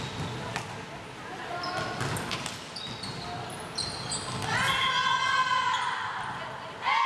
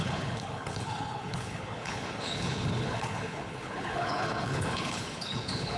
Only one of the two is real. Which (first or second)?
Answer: first